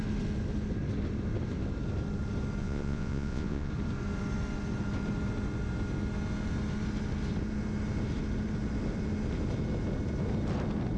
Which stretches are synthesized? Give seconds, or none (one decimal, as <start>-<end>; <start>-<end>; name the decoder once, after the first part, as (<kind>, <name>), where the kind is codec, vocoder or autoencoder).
2.6-3.7 (vocoder, Vocos)